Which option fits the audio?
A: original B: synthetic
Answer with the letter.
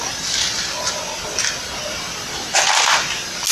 A